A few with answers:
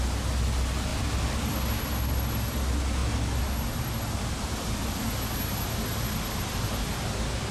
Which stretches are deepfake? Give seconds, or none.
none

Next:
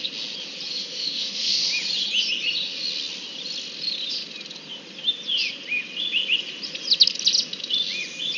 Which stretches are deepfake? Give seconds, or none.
0.8-1.7 (autoencoder, DAC-VAE)

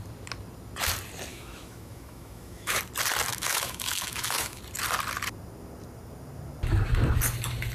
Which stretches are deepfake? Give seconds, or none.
1.3-2.8 (autoencoder, DAC-VAE); 3.3-4.6

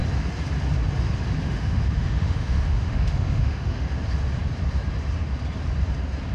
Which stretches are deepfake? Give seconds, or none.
1.4-3.9 (autoencoder, DAC-VAE)

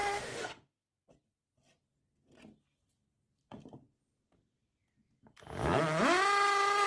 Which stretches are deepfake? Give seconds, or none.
0.0-0.9 (autoencoder, DAC-VAE)